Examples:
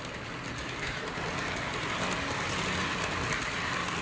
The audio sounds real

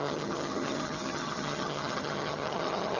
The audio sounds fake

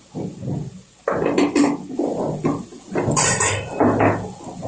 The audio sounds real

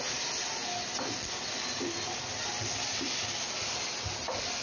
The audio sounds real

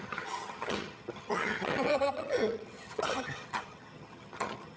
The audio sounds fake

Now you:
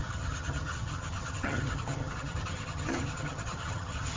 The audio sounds fake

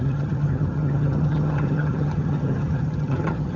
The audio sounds fake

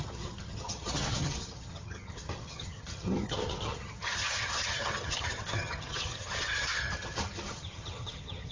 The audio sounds fake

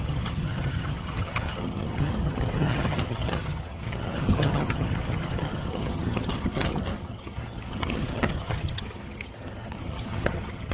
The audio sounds fake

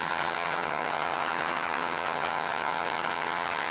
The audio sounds fake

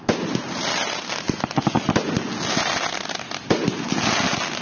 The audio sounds real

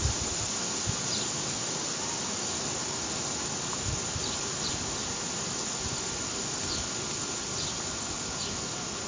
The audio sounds real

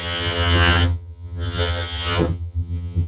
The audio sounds fake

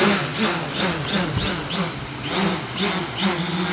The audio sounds real